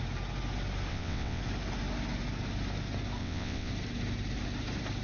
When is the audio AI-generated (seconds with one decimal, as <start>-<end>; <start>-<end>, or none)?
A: 0.9-1.4; 3.2-3.7